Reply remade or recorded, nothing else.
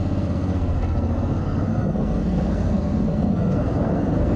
remade